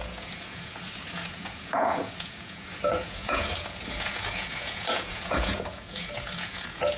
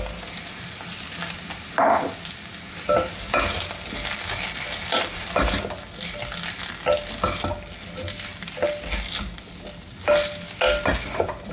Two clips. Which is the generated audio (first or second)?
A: first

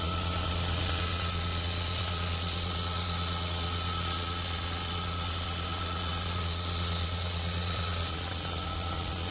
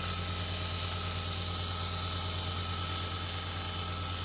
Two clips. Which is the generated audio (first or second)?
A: first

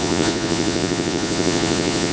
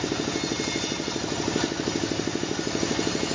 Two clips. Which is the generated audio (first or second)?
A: first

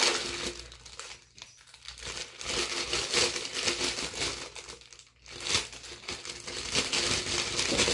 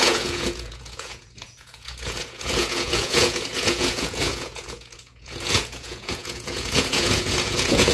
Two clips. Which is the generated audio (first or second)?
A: second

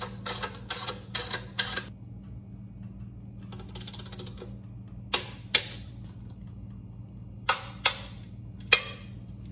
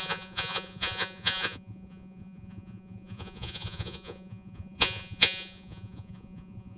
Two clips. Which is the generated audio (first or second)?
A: second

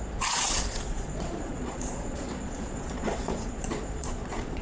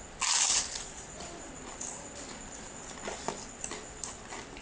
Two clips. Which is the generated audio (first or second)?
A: first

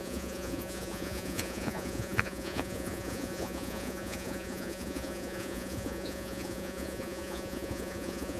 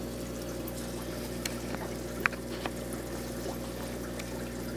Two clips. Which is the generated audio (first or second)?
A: first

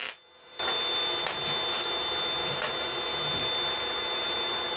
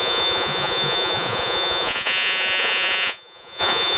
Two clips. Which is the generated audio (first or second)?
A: second